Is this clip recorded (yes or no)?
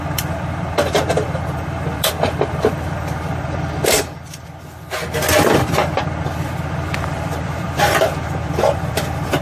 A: no